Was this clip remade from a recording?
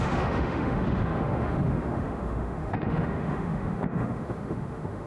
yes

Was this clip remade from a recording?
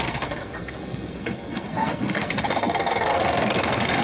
yes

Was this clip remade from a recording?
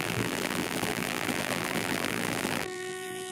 yes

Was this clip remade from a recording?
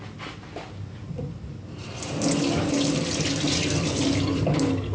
no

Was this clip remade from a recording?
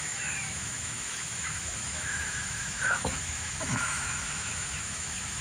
yes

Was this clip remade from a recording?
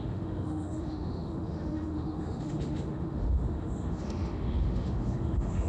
yes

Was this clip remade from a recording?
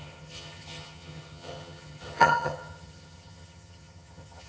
yes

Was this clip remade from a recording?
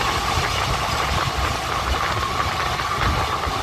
no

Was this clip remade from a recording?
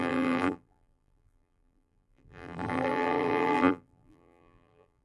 yes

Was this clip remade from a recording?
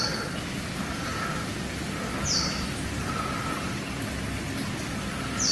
no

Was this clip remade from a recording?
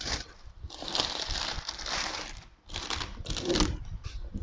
yes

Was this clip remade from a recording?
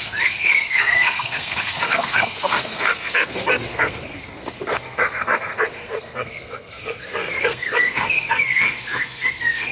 yes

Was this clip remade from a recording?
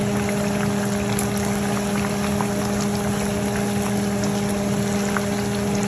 no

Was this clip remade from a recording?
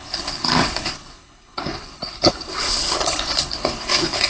yes